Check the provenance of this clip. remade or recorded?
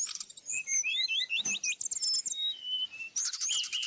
recorded